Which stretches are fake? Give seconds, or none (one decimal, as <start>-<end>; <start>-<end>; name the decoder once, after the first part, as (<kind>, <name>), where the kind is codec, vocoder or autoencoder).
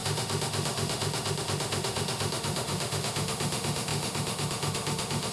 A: 0.0-5.3 (autoencoder, DAC-VAE)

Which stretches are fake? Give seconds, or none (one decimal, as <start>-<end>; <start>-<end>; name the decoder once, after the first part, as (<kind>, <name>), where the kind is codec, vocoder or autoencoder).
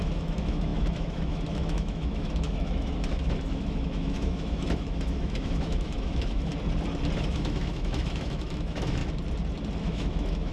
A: 0.0-6.5 (autoencoder, DAC-VAE); 7.2-9.0; 9.8-10.5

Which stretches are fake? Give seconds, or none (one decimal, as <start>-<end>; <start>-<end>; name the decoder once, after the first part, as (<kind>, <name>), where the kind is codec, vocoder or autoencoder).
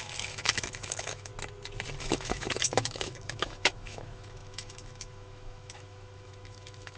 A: 0.0-1.3 (autoencoder, DAC-VAE); 2.0-7.0